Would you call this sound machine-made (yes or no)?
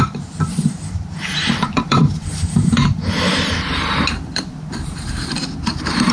yes